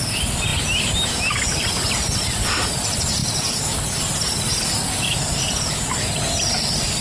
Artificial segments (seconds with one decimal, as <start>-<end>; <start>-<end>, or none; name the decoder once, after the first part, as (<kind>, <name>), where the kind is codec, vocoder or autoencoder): 0.0-0.5 (vocoder, BigVGAN v2); 1.3-3.2; 4.0-7.0